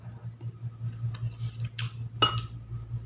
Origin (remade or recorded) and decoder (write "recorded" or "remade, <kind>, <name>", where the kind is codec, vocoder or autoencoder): recorded